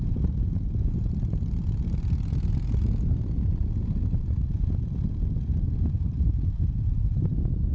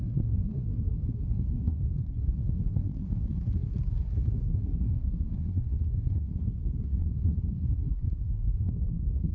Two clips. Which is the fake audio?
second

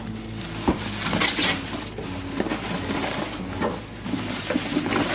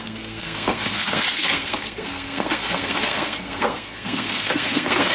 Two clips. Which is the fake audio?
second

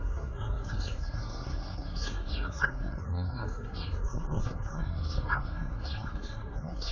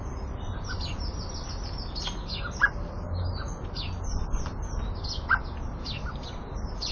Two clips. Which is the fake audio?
first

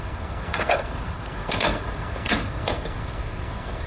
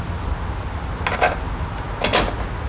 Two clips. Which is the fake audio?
first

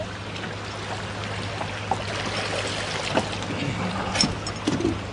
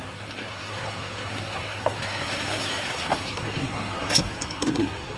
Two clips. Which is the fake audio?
second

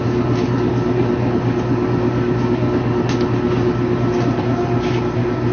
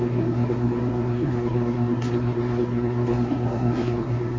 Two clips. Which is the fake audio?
second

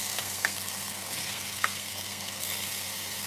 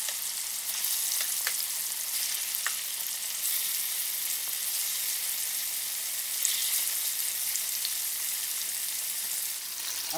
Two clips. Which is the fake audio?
first